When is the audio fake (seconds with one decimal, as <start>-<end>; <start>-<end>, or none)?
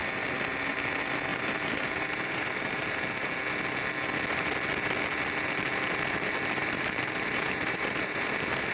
1.3-2.9; 6.6-8.7